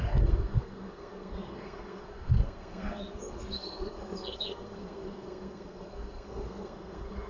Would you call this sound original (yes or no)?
no